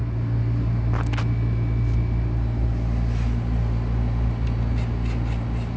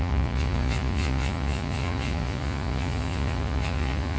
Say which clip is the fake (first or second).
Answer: second